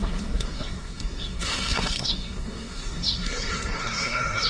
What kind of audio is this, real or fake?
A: fake